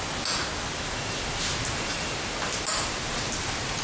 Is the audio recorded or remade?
recorded